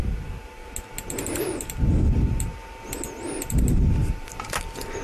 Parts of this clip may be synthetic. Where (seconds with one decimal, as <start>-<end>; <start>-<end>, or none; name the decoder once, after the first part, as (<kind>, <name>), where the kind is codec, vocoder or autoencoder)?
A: 0.0-0.6 (vocoder, BigVGAN v2); 1.4-2.6; 3.5-5.0